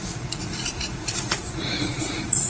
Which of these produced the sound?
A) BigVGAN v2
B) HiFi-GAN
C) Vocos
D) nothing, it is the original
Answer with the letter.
C